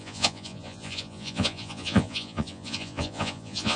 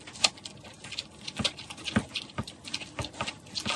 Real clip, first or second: second